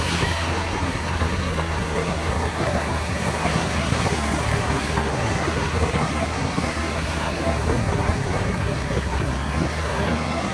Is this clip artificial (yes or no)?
yes